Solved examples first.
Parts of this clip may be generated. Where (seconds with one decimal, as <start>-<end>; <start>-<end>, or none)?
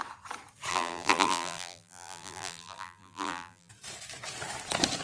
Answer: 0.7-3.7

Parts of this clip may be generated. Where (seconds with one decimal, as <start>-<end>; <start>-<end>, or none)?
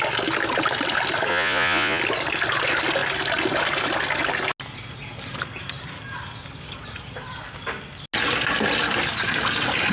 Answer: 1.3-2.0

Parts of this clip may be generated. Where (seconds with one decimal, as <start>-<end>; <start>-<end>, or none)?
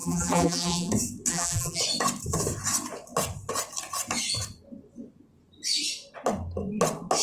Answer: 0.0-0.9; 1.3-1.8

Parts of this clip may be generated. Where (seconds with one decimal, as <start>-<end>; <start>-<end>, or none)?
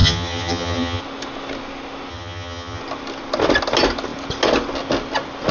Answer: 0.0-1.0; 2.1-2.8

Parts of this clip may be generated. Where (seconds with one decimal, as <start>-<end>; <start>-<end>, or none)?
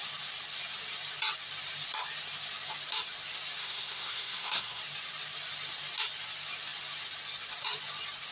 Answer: 3.6-4.8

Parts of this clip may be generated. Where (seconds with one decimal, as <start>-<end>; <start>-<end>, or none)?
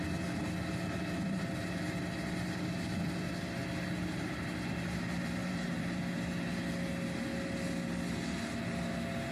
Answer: 5.4-6.0